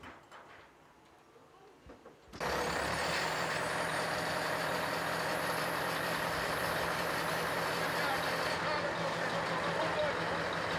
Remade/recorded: recorded